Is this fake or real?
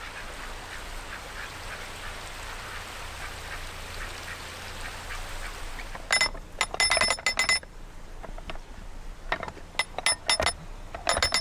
real